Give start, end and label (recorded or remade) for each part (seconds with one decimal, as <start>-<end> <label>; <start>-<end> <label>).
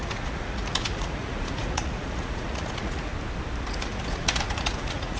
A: 0.0-3.1 remade; 3.1-3.7 recorded; 3.7-5.2 remade